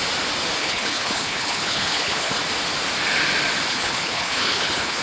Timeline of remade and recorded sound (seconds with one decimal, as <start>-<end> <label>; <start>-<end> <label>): 0.0-0.6 recorded; 0.6-2.4 remade; 2.4-3.7 recorded; 3.7-5.0 remade